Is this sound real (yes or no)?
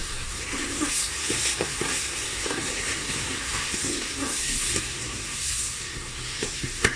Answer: no